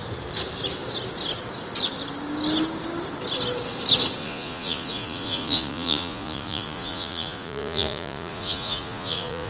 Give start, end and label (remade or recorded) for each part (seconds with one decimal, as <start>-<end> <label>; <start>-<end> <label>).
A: 0.0-4.2 recorded; 4.2-9.5 remade